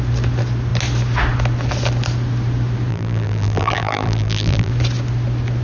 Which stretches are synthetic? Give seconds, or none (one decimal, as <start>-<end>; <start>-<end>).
2.9-4.7

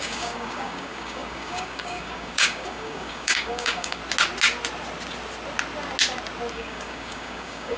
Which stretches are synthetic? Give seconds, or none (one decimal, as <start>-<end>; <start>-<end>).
0.0-4.0; 6.5-7.8